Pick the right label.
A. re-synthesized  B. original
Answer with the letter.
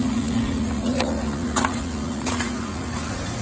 A